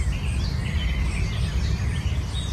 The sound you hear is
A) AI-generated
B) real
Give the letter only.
B